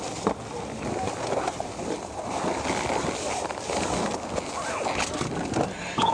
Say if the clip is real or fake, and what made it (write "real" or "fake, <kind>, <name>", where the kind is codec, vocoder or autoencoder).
real